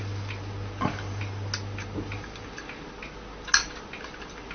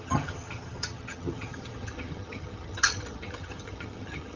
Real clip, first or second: first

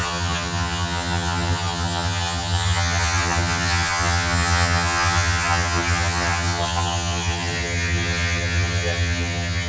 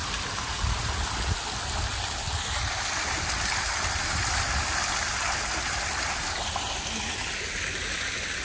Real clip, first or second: second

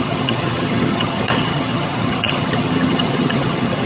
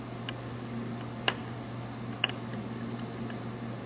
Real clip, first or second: second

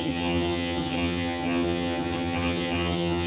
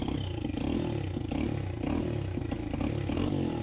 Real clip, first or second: second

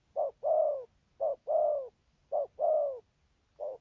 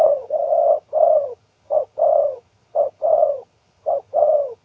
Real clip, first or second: first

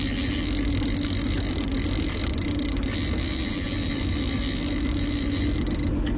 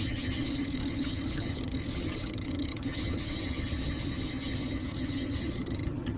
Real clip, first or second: first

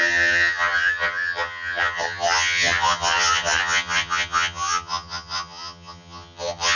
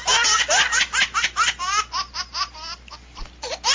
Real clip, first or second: second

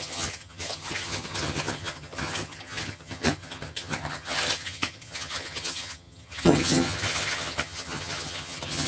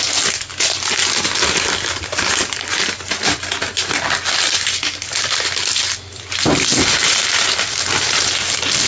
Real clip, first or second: second